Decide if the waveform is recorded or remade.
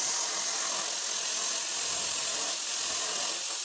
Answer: recorded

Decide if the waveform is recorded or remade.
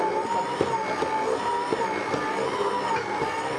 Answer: recorded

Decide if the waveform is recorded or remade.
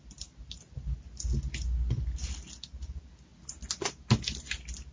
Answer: recorded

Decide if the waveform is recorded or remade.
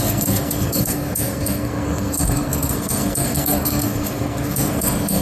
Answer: remade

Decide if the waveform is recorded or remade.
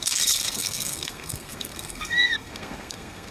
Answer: remade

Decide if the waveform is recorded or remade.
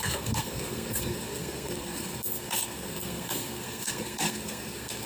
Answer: remade